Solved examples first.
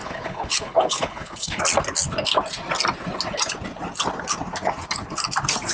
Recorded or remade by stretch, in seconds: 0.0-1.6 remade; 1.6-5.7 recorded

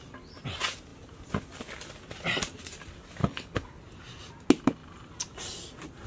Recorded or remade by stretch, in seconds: 0.0-3.2 recorded; 3.2-3.8 remade; 3.8-6.1 recorded

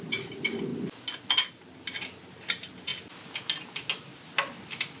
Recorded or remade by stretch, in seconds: 0.0-5.0 recorded